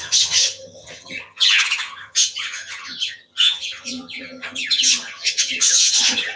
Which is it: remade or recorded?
remade